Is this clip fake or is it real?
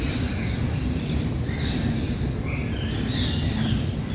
real